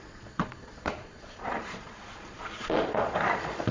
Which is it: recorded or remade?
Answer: remade